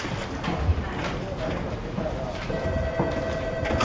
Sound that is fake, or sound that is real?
real